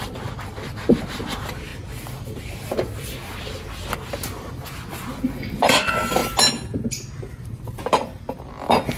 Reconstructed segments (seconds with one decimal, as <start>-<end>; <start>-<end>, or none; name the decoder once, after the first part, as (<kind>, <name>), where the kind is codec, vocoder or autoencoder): 0.0-1.7 (vocoder, BigVGAN v2); 5.5-6.2; 8.5-9.0